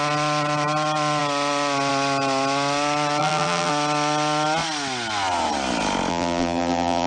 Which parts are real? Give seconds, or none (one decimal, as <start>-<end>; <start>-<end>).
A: 0.0-3.2; 3.7-6.1